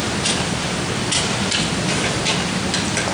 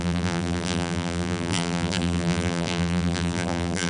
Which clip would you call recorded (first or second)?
first